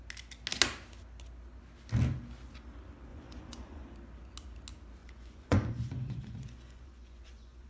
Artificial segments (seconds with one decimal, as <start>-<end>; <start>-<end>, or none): 3.1-3.8; 5.0-7.7